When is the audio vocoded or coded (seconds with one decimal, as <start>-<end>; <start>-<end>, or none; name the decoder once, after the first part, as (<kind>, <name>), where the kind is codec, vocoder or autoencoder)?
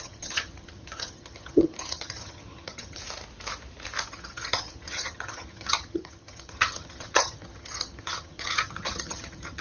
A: 0.0-3.0 (vocoder, HiFi-GAN); 4.1-9.6